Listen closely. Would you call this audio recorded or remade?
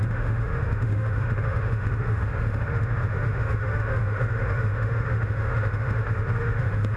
remade